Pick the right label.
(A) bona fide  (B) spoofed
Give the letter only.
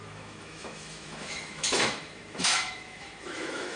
B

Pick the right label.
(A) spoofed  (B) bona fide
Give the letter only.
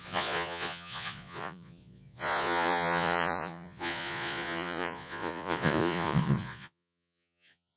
A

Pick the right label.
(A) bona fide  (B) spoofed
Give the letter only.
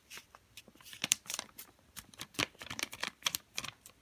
B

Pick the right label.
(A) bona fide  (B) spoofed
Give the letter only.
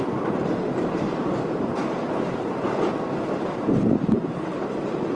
B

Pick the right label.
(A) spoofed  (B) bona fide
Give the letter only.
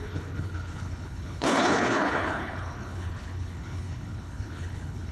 A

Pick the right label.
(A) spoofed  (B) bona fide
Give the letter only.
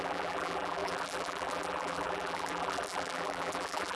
A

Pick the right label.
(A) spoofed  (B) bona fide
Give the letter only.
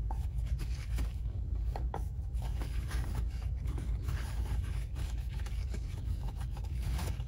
A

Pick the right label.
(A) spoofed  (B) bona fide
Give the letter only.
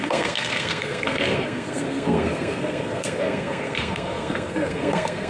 A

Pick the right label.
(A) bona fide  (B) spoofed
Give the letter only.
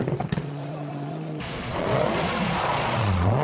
B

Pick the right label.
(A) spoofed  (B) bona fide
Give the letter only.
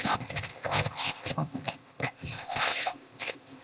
A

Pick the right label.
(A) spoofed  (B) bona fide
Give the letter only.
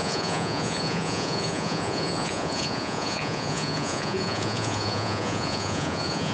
A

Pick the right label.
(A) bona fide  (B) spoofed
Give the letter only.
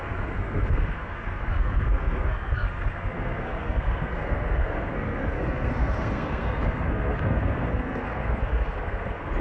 B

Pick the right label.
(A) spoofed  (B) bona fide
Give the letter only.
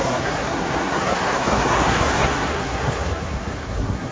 A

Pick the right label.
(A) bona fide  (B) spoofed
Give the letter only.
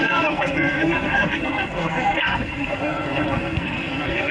B